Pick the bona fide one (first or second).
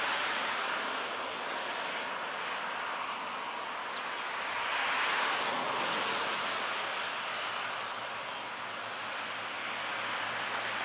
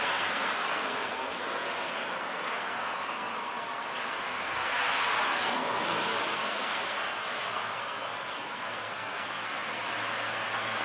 first